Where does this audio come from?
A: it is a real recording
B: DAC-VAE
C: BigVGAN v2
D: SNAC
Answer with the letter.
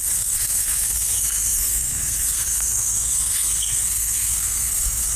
D